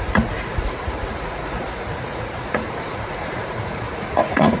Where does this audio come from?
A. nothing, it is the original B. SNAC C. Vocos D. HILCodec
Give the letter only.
C